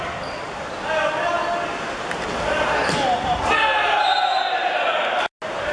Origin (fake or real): real